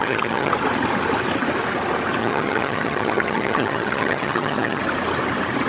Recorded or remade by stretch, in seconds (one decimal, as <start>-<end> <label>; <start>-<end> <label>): 0.0-0.5 remade; 0.5-2.2 recorded; 2.2-4.8 remade; 4.8-5.7 recorded

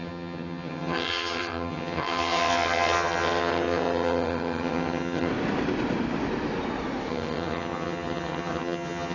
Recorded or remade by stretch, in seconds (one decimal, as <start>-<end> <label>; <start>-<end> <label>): 0.0-5.3 remade; 5.3-7.1 recorded; 7.1-9.1 remade

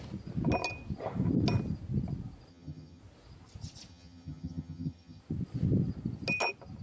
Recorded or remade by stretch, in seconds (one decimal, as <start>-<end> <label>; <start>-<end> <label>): 0.0-2.5 recorded; 2.5-3.0 remade; 3.0-3.9 recorded; 3.9-5.2 remade; 5.2-6.8 recorded

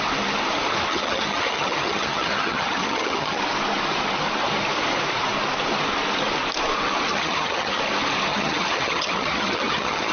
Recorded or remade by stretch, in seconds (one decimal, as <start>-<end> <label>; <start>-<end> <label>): 0.0-0.9 recorded; 0.9-3.4 remade; 3.4-7.1 recorded; 7.1-7.8 remade; 7.8-8.3 recorded; 8.3-10.1 remade

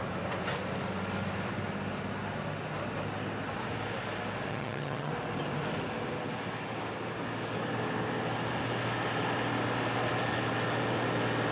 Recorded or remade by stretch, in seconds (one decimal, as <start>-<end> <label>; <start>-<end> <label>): 0.0-4.5 recorded; 4.5-5.1 remade; 5.1-11.5 recorded

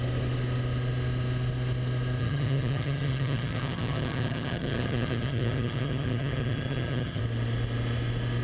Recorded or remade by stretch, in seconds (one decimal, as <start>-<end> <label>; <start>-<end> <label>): 0.0-2.2 recorded; 2.2-7.2 remade; 7.2-8.4 recorded

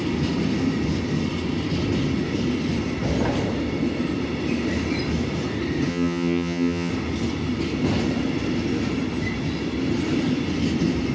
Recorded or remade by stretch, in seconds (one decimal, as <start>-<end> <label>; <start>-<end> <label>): 0.0-5.9 recorded; 5.9-6.9 remade; 6.9-11.1 recorded

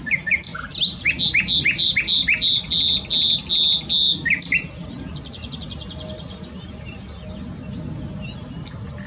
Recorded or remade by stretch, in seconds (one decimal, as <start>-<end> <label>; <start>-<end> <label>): 0.0-9.1 recorded